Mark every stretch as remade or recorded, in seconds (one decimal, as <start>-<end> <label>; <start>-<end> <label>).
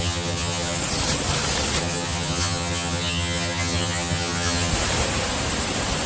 0.0-0.8 remade; 0.8-1.8 recorded; 1.8-4.7 remade; 4.7-6.1 recorded